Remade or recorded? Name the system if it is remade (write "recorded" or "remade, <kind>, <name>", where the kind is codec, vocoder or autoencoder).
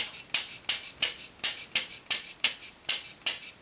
recorded